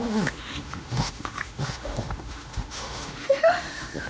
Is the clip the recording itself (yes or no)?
no